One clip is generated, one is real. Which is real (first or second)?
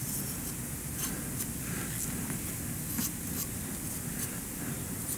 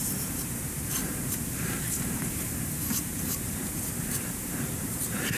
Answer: first